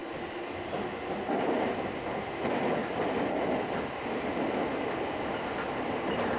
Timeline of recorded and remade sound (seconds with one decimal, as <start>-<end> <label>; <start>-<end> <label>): 0.0-0.7 remade; 0.7-6.4 recorded

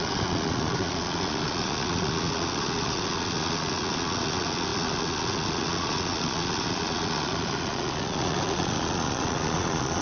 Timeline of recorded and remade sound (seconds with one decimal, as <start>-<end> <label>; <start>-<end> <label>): 0.0-10.0 remade

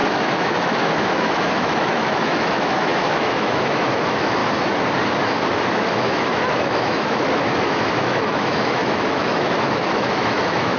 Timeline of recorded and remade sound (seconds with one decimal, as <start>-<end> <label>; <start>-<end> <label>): 0.0-4.4 remade; 4.4-5.7 recorded; 5.7-10.8 remade

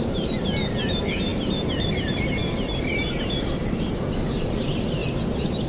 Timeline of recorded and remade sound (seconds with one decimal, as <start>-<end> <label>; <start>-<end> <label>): 0.0-2.4 remade; 2.4-3.2 recorded; 3.2-5.0 remade; 5.0-5.7 recorded

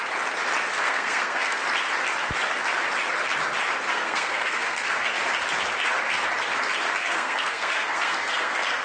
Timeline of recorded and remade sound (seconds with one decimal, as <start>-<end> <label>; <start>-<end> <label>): 0.0-0.8 recorded; 0.8-1.6 remade; 1.6-3.9 recorded; 3.9-5.1 remade; 5.1-7.0 recorded; 7.0-8.8 remade

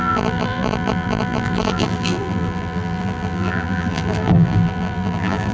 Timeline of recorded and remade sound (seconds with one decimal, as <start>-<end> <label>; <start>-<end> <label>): 0.0-5.5 remade

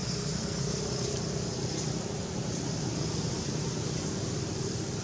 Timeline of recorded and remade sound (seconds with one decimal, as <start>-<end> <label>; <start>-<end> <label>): 0.0-0.8 remade; 0.8-5.0 recorded

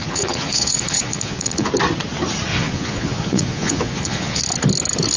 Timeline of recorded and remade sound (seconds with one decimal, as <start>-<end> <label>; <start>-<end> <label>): 0.0-1.7 remade; 1.7-2.5 recorded; 2.5-4.4 remade; 4.4-5.2 recorded